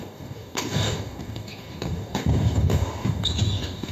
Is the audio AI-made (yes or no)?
yes